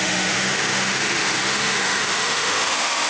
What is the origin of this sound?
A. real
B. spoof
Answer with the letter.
B